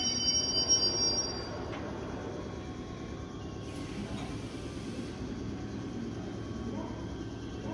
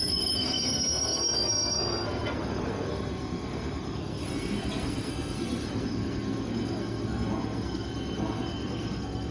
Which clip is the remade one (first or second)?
second